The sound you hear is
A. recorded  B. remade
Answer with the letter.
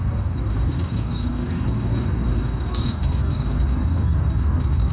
B